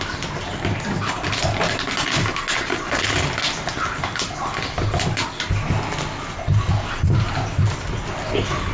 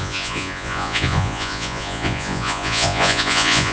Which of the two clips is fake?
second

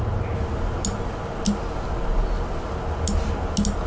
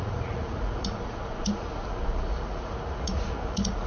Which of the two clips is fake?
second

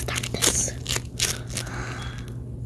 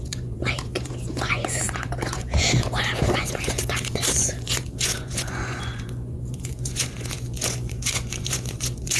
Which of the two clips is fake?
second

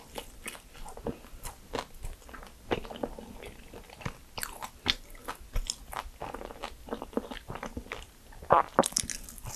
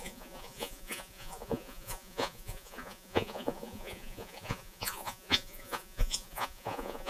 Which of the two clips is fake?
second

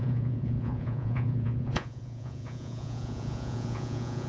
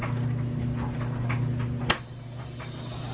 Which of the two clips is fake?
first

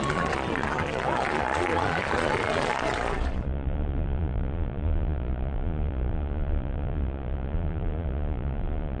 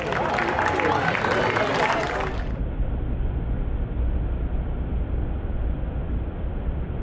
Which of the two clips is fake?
first